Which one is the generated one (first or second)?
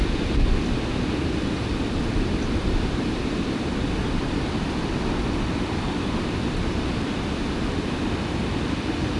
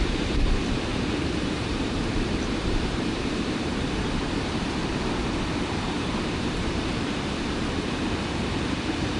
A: second